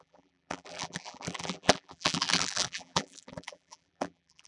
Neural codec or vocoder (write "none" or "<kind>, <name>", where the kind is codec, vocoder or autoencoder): vocoder, BigVGAN v2